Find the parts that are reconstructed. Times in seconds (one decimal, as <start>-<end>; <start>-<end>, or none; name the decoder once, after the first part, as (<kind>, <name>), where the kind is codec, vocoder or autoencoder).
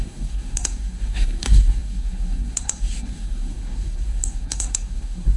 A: 0.0-5.4 (codec, SNAC)